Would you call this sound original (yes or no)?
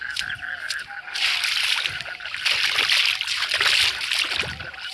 yes